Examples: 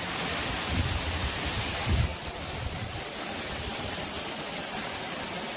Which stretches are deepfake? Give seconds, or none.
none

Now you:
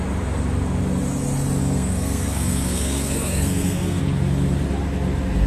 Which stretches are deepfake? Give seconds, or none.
1.6-4.0 (codec, SNAC)

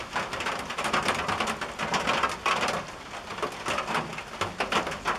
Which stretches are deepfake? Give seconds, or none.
none